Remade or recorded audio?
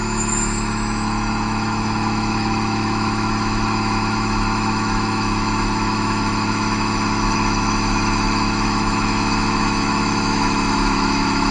remade